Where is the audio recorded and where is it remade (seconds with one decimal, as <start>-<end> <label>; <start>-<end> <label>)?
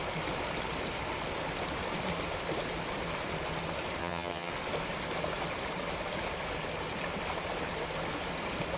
0.0-4.0 recorded; 4.0-4.5 remade; 4.5-8.8 recorded